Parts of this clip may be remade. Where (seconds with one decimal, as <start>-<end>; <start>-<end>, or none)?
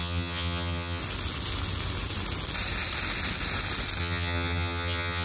0.0-1.0; 4.0-5.2